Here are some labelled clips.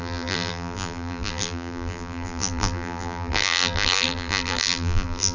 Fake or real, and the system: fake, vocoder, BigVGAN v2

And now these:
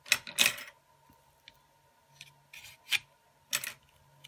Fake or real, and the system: real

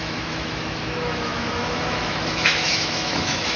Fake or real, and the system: fake, autoencoder, DAC-VAE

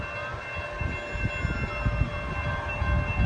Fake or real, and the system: real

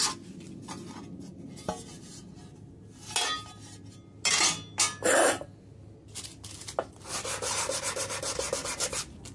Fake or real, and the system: real